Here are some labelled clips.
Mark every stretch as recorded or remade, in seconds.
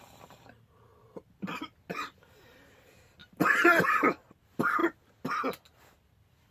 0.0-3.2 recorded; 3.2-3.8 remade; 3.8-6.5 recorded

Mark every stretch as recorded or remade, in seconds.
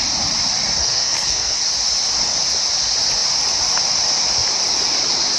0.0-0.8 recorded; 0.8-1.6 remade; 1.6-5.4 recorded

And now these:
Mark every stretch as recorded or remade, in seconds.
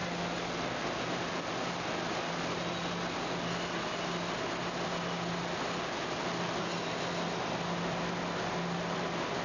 0.0-9.4 recorded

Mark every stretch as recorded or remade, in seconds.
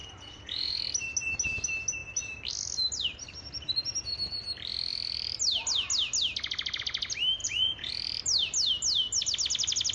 0.0-0.8 remade; 0.8-7.4 recorded; 7.4-7.9 remade; 7.9-9.9 recorded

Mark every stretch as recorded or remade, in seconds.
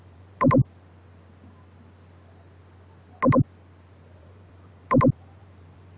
0.0-0.6 remade; 0.6-4.2 recorded; 4.2-6.0 remade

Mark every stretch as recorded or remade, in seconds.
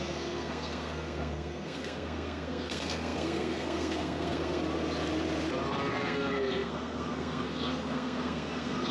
0.0-4.6 remade; 4.6-5.9 recorded; 5.9-8.9 remade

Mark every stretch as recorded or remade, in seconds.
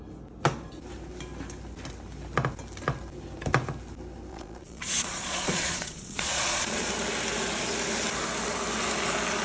0.0-4.3 recorded; 4.3-6.9 remade; 6.9-9.4 recorded